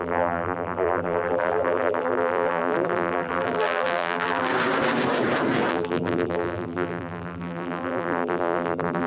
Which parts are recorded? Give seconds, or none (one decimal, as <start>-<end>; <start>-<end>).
4.5-5.7